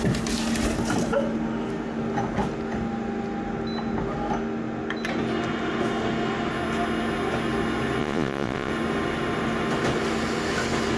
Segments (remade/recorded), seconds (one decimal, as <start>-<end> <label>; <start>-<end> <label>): 0.0-8.0 recorded; 8.0-8.7 remade; 8.7-11.0 recorded